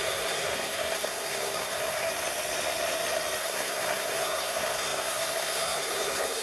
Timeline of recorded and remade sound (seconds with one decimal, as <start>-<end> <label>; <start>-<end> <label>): 0.0-2.1 remade; 2.1-3.4 recorded; 3.4-6.4 remade